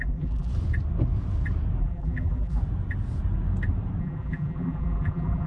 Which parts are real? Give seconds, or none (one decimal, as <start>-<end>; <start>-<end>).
0.5-1.8; 2.6-4.0